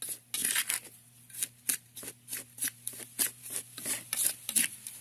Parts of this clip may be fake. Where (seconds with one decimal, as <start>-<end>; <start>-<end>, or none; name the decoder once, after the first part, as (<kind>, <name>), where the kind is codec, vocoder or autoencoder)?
none